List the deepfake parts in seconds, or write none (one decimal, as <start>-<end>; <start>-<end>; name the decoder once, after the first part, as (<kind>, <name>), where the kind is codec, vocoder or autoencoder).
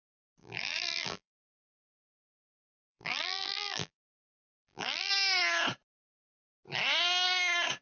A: 0.4-5.1 (vocoder, BigVGAN v2)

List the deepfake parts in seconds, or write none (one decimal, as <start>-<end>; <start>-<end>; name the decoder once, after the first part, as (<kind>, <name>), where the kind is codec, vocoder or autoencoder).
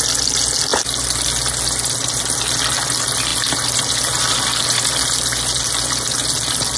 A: none